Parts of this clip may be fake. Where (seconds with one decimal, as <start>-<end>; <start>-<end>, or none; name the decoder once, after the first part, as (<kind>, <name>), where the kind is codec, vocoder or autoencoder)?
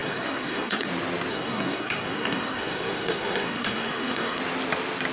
0.0-0.9 (codec, SNAC); 1.3-4.4